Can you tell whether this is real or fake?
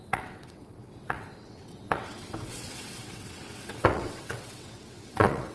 fake